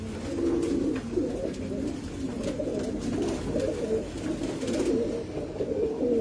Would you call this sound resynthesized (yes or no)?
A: no